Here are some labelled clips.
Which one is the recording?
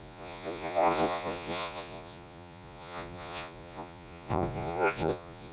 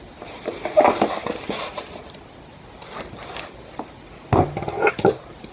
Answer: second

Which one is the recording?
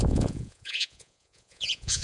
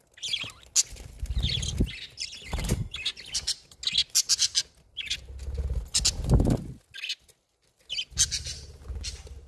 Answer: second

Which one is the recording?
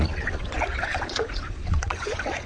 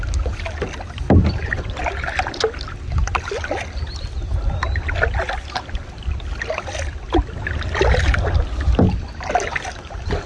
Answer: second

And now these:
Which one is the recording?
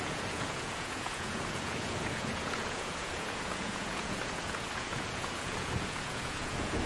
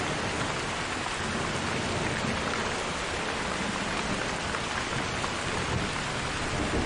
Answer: second